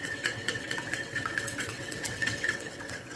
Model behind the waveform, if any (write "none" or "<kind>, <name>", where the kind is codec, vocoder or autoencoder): vocoder, WaveNeXt